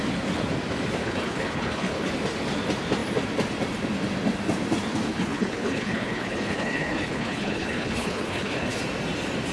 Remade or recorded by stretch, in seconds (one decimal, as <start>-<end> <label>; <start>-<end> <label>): 0.0-1.0 recorded; 1.0-2.1 remade; 2.1-5.1 recorded; 5.1-8.8 remade; 8.8-9.5 recorded